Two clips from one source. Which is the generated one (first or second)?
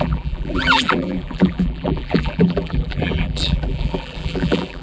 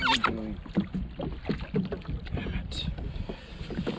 first